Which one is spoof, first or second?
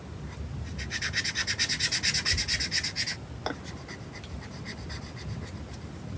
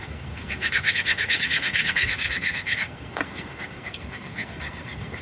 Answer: second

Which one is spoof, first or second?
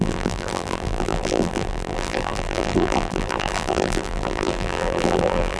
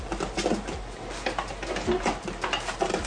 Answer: first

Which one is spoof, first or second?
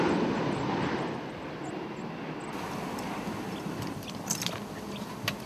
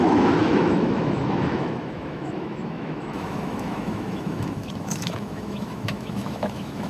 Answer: second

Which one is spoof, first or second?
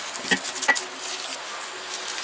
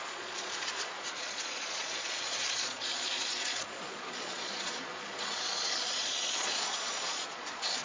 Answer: second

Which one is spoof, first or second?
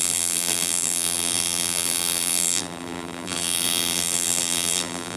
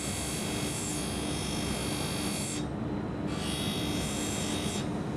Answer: first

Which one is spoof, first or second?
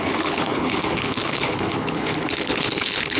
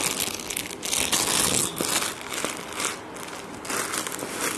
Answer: first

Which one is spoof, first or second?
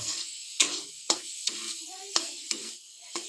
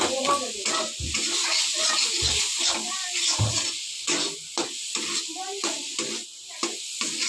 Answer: first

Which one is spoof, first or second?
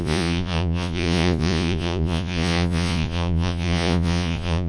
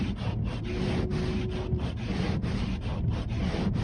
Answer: first